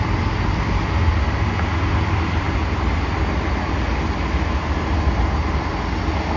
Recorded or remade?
recorded